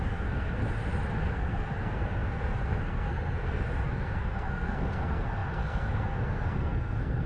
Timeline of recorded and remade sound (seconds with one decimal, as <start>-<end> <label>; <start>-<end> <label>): 0.0-0.6 remade; 0.6-1.3 recorded; 1.3-7.3 remade